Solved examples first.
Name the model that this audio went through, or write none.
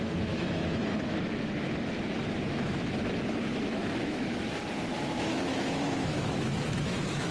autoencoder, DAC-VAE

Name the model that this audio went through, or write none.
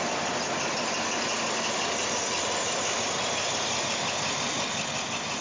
none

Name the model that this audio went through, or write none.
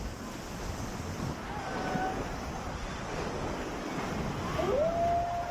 none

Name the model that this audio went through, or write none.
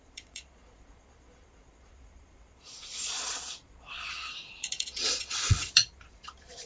vocoder, Vocos